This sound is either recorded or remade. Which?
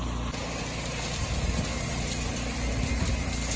recorded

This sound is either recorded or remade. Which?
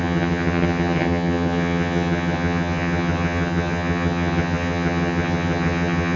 remade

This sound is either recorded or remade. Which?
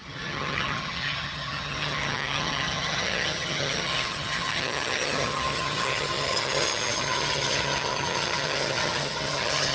remade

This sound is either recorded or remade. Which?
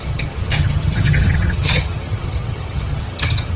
remade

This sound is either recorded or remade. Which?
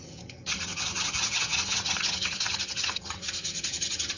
remade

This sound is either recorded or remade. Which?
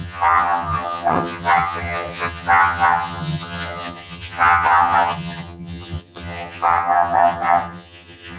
remade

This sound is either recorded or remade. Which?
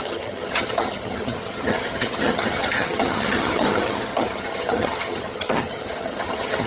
remade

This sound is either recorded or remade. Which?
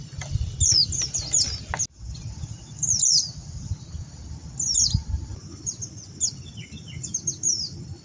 recorded